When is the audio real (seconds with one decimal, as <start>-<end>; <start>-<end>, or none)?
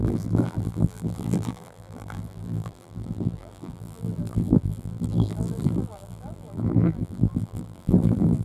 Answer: none